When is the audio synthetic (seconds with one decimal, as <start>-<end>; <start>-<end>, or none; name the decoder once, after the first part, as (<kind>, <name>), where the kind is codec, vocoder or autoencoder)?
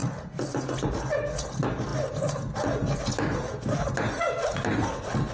none